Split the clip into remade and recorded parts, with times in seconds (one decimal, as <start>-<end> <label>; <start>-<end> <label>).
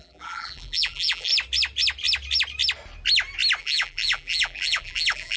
0.0-1.3 remade; 1.3-3.6 recorded; 3.6-5.4 remade